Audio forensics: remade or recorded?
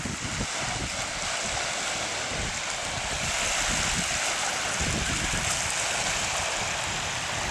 recorded